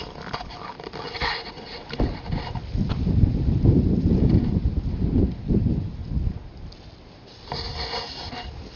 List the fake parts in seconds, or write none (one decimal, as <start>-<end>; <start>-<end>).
1.4-2.2